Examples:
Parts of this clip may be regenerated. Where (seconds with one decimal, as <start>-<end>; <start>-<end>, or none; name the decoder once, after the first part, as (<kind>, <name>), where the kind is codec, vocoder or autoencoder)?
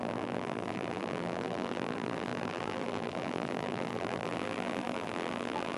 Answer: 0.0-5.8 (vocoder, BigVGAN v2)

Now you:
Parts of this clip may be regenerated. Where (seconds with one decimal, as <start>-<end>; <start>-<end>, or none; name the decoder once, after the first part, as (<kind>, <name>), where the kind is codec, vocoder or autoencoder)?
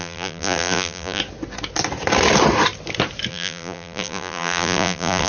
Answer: 0.0-1.2 (vocoder, BigVGAN v2); 3.3-5.3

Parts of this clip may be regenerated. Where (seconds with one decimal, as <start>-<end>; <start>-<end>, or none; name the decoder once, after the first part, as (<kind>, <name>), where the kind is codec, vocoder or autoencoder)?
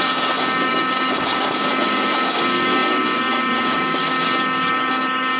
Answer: 0.0-5.4 (codec, DAC)